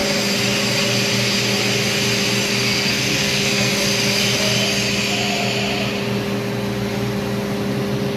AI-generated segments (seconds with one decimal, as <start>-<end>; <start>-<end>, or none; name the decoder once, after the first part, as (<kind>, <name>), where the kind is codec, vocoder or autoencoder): 2.6-3.7 (codec, SNAC)

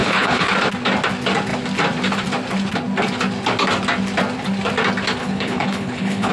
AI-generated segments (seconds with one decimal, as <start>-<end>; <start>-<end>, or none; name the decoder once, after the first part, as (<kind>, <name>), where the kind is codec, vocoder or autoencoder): 0.0-0.5 (codec, HILCodec); 5.2-6.3

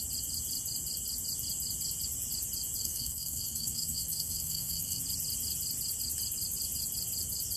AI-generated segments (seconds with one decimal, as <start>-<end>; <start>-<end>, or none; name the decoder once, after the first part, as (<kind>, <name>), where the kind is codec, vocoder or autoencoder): 2.8-5.0 (codec, SNAC)

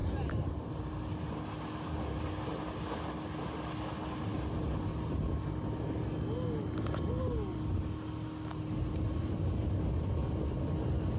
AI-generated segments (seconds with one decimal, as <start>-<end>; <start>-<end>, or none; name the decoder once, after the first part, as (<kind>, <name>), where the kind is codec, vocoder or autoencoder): 0.0-0.7 (vocoder, BigVGAN v2)

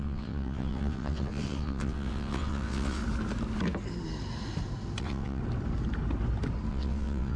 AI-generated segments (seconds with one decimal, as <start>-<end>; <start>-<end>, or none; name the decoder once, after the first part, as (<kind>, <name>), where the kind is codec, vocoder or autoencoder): 0.0-3.0 (vocoder, WaveNeXt); 5.0-5.4; 6.7-7.4